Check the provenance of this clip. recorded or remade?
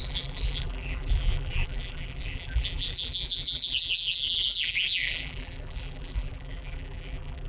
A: remade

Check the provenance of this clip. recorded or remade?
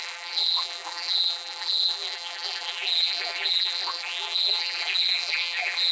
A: remade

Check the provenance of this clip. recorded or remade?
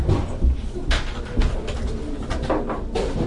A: recorded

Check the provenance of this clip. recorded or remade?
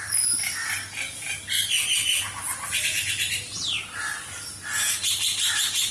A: recorded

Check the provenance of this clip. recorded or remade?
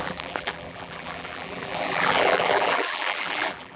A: remade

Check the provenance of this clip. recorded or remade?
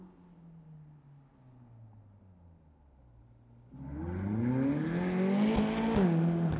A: recorded